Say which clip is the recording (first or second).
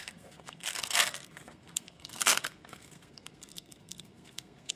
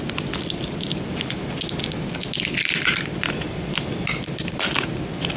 second